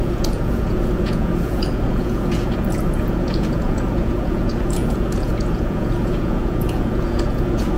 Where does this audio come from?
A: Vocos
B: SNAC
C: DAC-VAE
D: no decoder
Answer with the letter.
A